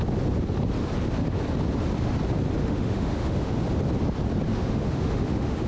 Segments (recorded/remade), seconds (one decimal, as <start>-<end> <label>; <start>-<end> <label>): 0.0-2.6 recorded; 2.6-3.5 remade; 3.5-4.5 recorded; 4.5-5.7 remade